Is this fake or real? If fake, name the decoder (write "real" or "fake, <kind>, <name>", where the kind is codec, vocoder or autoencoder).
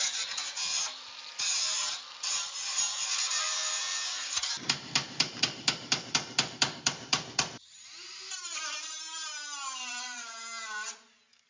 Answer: fake, vocoder, BigVGAN v2